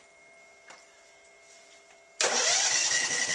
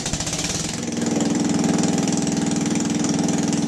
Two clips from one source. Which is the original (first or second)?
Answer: first